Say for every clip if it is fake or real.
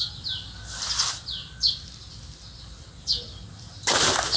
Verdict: real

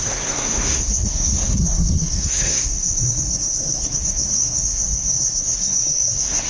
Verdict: fake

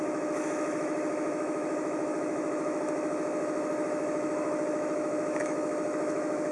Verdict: fake